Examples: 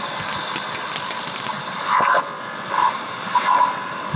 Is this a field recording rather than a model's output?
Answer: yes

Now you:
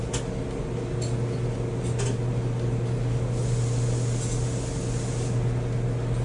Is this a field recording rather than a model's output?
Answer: yes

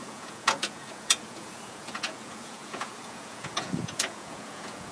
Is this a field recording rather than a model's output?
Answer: no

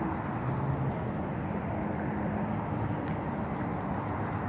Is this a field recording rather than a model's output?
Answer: yes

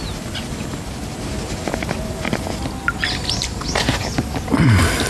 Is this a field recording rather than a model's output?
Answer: yes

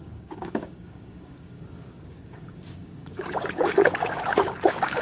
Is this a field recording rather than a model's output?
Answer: no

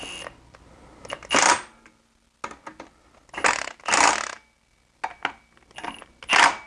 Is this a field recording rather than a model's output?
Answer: yes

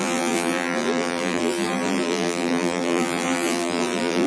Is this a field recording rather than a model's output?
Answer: no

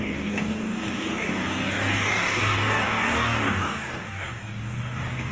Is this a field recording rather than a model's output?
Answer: no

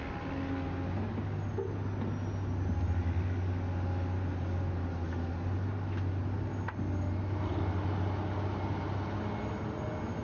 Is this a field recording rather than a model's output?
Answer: yes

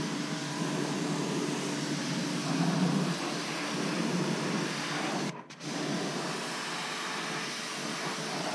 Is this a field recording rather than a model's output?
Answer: yes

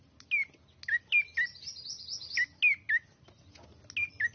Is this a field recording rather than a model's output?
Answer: yes